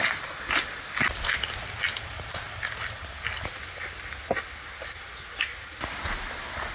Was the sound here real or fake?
real